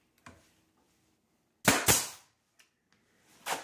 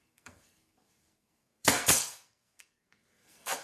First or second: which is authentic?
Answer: first